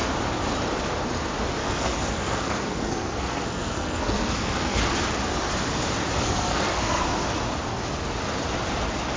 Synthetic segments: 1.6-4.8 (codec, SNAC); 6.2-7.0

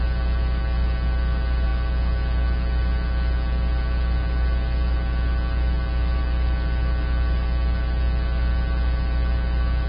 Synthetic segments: none

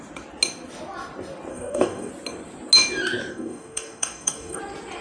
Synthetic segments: 1.5-2.1 (codec, DAC); 3.3-4.6

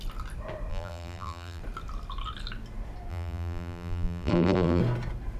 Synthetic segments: 0.7-1.6 (vocoder, BigVGAN v2); 3.1-4.8

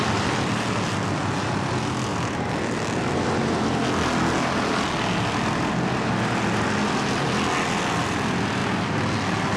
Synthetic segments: none

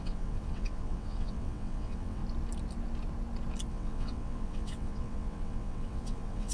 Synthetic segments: 0.0-2.2 (vocoder, WaveNeXt); 3.7-6.5

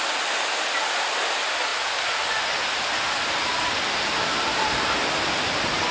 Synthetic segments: none

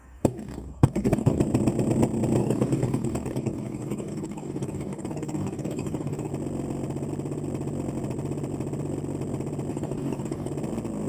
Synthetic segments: 0.0-1.4 (codec, DAC); 2.4-6.3; 9.7-10.5